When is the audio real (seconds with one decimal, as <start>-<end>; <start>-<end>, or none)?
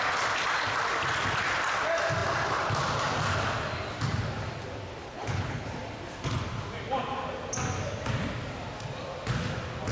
0.0-5.0; 5.7-9.9